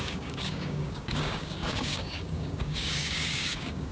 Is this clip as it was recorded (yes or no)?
no